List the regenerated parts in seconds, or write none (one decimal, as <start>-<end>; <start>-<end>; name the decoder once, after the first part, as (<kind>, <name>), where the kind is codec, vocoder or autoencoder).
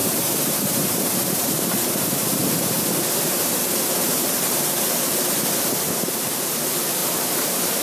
0.0-1.5 (vocoder, BigVGAN v2); 3.3-5.0